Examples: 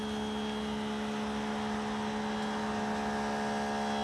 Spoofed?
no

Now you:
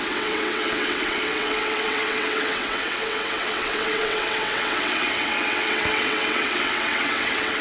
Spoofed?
yes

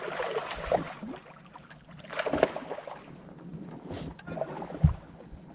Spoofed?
no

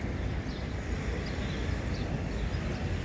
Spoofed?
no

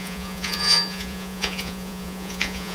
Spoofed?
yes